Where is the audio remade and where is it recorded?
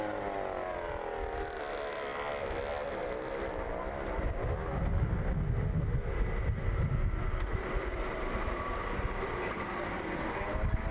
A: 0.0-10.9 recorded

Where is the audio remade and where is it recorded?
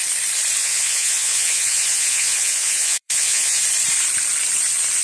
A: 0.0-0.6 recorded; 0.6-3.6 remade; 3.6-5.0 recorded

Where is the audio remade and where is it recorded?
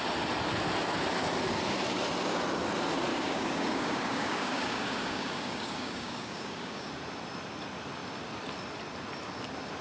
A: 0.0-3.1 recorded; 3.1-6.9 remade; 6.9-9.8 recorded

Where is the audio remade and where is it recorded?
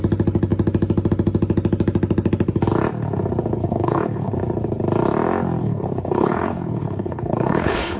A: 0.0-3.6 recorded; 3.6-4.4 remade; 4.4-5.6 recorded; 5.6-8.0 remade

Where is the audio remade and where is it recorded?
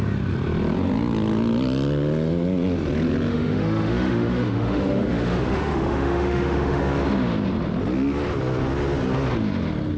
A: 0.0-3.3 recorded; 3.3-6.8 remade; 6.8-10.0 recorded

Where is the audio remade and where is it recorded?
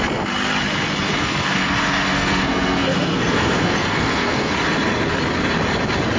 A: 0.0-1.1 recorded; 1.1-4.5 remade; 4.5-6.2 recorded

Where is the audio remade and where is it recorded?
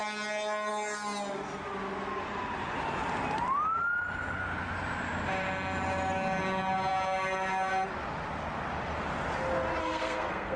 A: 0.0-9.8 recorded; 9.8-10.6 remade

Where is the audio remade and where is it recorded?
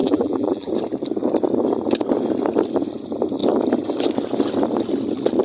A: 0.0-0.7 remade; 0.7-5.4 recorded